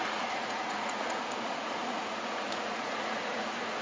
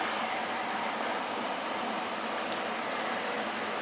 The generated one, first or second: first